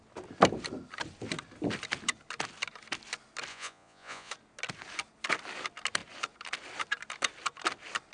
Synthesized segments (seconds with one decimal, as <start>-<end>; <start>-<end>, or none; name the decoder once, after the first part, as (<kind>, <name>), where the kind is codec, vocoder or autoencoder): 3.5-4.3 (vocoder, Vocos)